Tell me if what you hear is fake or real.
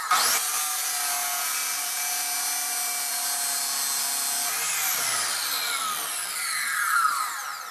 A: real